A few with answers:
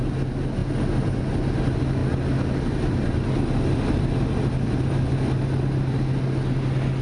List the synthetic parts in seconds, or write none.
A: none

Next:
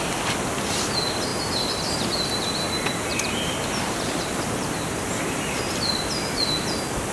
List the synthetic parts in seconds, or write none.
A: 3.1-5.6 (vocoder, BigVGAN v2)

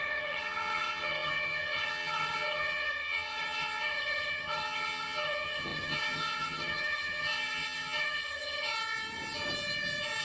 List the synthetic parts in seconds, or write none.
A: 0.0-8.7 (vocoder, HiFi-GAN)

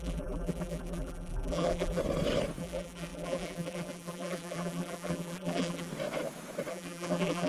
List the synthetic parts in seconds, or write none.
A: 0.0-2.0 (vocoder, BigVGAN v2); 2.6-5.9; 6.7-7.5

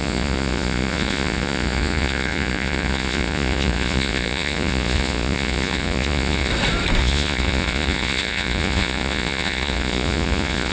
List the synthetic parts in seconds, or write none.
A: 0.0-6.5 (vocoder, Vocos); 7.0-10.7